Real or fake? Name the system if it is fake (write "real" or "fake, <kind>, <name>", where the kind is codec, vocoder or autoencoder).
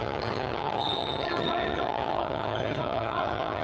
fake, vocoder, HiFi-GAN